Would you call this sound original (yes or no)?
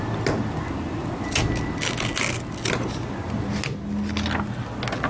yes